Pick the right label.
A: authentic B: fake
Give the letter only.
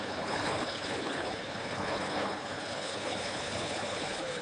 B